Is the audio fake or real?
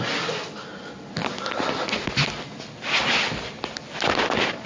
real